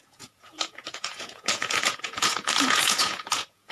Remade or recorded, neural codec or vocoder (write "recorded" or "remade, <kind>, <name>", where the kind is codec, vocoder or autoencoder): remade, vocoder, Vocos